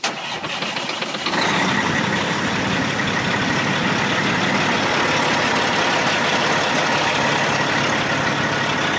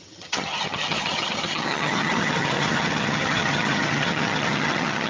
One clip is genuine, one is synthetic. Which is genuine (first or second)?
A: first